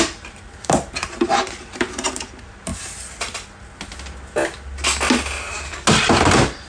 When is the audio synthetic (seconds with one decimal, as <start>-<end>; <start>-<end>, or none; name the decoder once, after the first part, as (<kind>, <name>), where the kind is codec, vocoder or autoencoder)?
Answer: 0.0-2.7 (vocoder, BigVGAN v2)